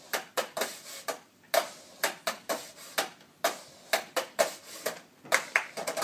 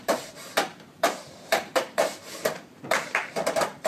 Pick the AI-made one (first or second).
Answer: second